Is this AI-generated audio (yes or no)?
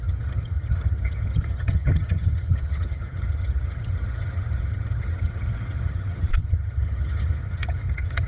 yes